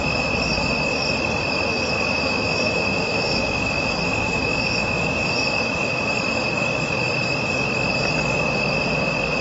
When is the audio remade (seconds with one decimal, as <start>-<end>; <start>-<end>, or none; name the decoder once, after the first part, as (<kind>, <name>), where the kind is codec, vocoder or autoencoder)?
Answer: 1.7-6.1 (autoencoder, DAC-VAE)